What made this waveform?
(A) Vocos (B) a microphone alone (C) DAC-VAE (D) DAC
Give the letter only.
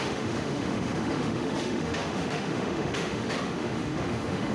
C